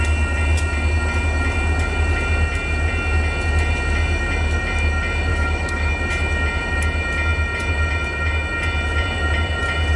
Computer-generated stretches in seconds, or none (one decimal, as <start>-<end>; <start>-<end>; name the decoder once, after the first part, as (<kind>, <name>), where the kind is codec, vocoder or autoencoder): 5.3-5.9 (autoencoder, DAC-VAE)